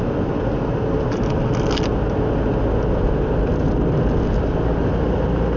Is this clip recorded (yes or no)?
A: yes